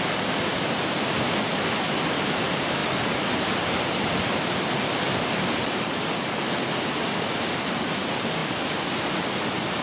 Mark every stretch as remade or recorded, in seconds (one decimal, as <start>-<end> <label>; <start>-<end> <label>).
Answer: 0.0-9.8 recorded